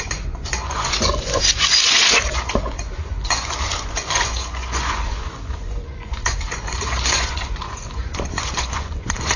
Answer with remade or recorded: remade